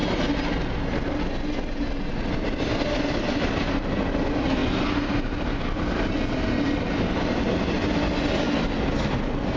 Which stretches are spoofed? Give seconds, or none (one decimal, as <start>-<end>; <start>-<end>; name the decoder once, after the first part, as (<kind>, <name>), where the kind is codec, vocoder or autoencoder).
none